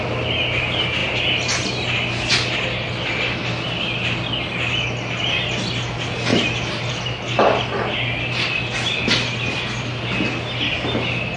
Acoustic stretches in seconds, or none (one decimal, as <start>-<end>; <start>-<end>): 0.0-6.3; 6.9-11.4